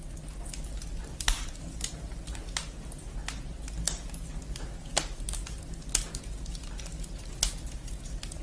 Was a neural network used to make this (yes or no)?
no